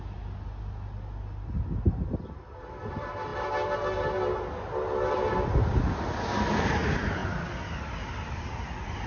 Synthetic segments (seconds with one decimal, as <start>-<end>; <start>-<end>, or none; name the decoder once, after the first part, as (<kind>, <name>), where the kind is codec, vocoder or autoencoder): none

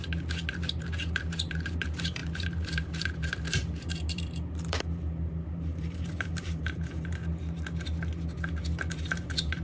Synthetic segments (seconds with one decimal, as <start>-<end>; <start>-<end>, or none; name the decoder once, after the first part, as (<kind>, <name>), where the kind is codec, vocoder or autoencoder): 0.5-7.2 (vocoder, BigVGAN v2); 8.9-9.6

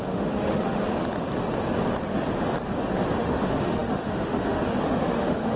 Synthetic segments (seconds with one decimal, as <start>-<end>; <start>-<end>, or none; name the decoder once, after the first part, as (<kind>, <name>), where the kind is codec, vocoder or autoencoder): 0.0-0.8 (autoencoder, DAC-VAE); 3.2-5.6